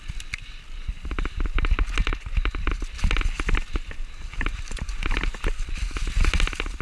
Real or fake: real